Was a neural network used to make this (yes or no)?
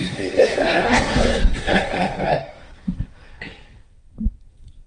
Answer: yes